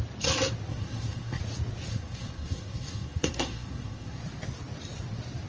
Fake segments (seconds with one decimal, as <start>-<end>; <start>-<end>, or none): 0.7-1.4; 1.9-4.2